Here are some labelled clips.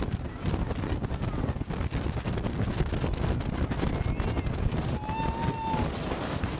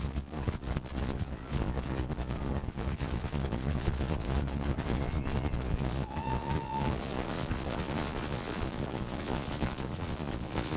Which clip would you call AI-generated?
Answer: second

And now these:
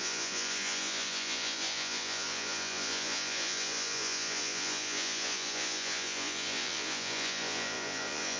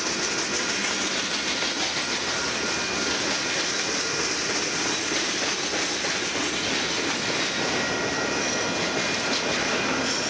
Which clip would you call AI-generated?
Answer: first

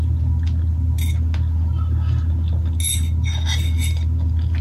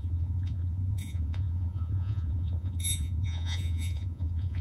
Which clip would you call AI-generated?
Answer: second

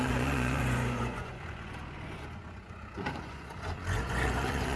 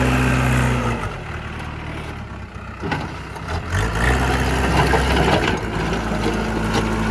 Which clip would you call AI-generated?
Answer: first